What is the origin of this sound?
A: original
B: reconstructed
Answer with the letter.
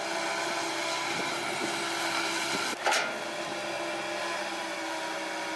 A